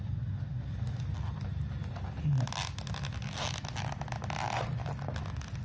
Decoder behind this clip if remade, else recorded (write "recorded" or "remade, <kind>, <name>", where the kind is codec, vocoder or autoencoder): recorded